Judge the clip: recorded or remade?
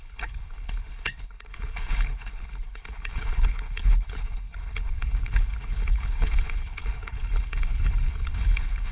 remade